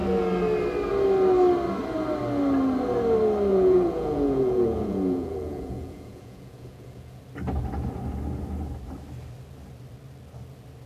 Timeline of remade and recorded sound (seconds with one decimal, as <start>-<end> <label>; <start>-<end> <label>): 0.0-3.5 recorded; 3.5-7.2 remade; 7.2-10.9 recorded